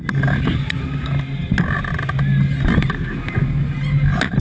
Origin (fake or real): real